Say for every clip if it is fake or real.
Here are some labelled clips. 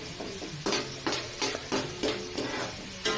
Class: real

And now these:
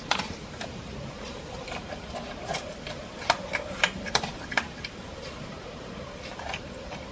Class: fake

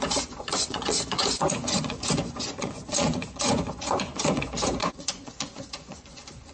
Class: fake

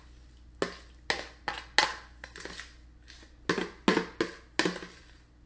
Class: real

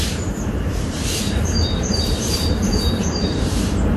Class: fake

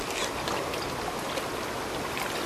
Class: real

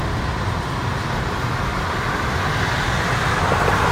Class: real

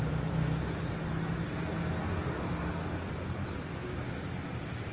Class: real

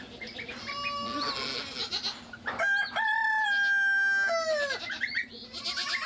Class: real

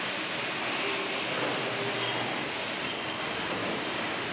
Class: real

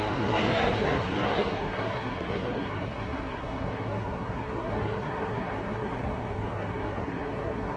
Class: fake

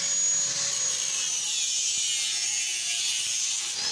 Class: real